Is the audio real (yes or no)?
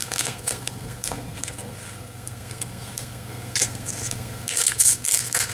no